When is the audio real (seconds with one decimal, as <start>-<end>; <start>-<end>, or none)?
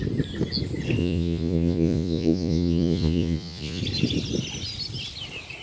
0.0-1.0; 3.8-5.6